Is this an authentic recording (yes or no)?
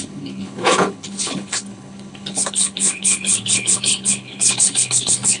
no